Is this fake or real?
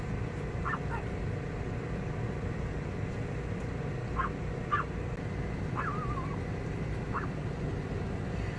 real